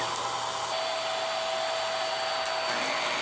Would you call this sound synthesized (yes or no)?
no